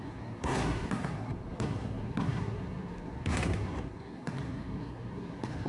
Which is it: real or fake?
fake